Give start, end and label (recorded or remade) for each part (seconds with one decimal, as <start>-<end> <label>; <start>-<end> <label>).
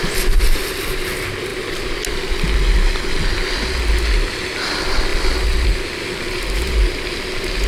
0.0-5.1 recorded; 5.1-5.8 remade; 5.8-7.7 recorded